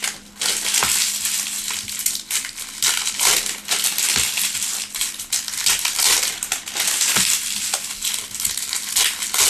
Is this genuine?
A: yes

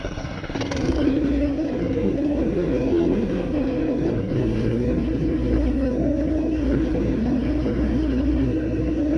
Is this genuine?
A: no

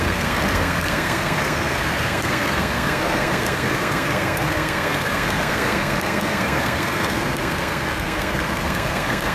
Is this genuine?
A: no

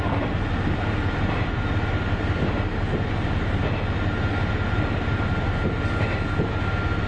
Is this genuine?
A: yes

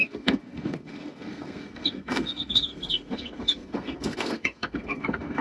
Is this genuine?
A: no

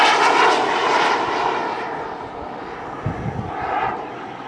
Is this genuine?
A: yes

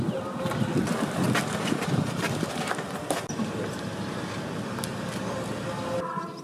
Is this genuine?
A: yes